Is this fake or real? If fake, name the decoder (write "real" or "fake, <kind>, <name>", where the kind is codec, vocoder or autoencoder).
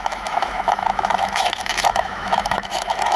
fake, autoencoder, DAC-VAE